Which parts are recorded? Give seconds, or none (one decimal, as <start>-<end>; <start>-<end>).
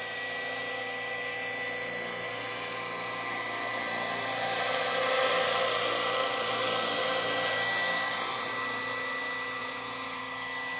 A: 0.0-9.6; 10.2-10.8